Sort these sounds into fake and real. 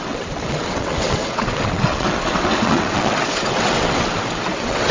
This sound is fake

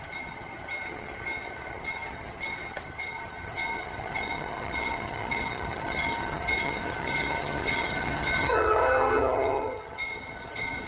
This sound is fake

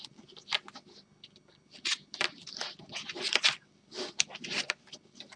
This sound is real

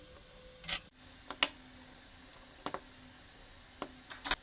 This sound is real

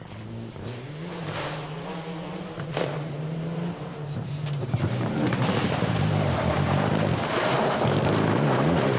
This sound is fake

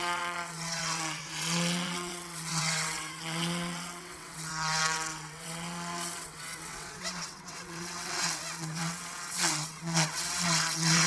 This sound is fake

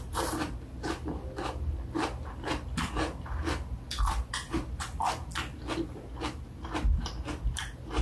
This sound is fake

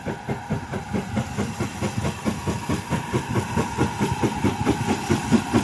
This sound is real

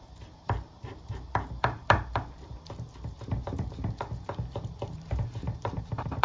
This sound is fake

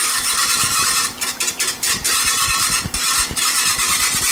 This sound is fake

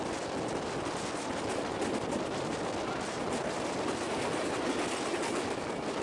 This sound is real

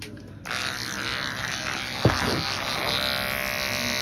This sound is real